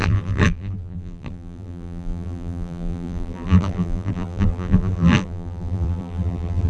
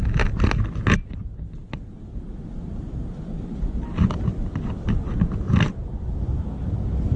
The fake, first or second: first